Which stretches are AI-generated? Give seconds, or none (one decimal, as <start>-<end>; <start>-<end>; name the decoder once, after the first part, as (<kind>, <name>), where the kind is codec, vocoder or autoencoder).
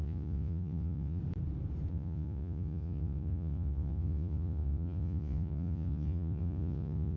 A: 0.0-1.2 (vocoder, Vocos); 1.9-7.2